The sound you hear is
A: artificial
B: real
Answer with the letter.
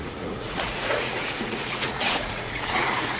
A